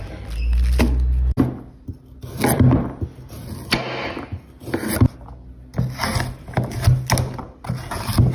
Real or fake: real